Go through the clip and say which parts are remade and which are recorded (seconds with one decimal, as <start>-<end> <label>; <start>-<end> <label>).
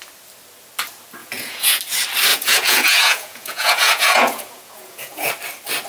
0.0-1.2 recorded; 1.2-1.8 remade; 1.8-2.3 recorded; 2.3-5.3 remade; 5.3-5.9 recorded